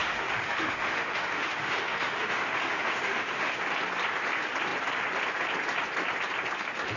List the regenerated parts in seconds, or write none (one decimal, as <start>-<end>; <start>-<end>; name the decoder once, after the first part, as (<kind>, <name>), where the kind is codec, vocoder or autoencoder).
0.0-3.6 (autoencoder, DAC-VAE)